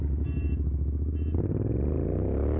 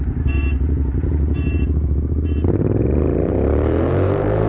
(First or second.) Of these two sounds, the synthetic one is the second